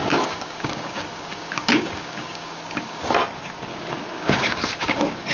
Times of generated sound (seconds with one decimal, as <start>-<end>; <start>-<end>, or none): 0.0-3.0; 3.7-5.3